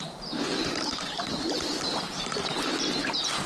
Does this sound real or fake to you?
real